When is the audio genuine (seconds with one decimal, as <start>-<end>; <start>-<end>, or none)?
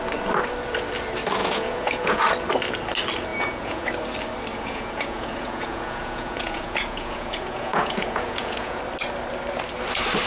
0.0-1.4; 2.2-3.3; 3.9-4.5; 8.8-10.3